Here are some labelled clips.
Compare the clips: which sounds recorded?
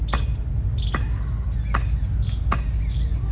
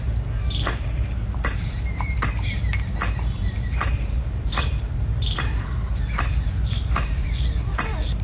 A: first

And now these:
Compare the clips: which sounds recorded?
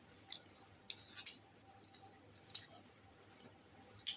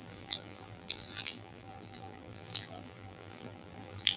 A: first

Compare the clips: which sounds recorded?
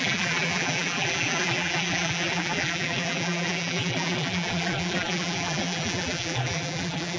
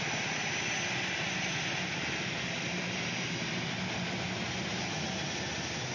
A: second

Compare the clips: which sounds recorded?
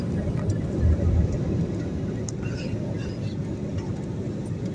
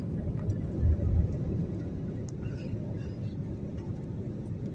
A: first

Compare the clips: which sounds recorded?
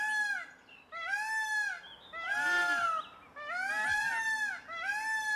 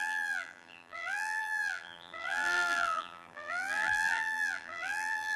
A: first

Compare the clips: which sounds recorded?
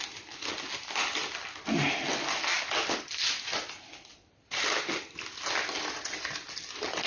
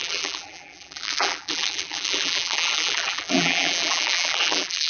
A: first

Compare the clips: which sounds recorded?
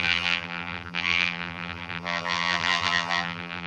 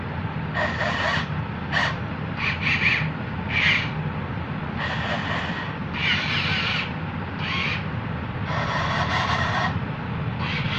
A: second